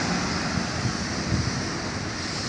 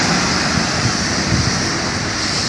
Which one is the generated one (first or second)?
second